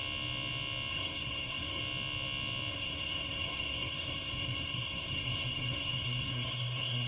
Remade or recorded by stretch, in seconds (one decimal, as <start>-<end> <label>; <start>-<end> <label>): 0.0-0.9 recorded; 0.9-1.8 remade; 1.8-2.7 recorded; 2.7-7.1 remade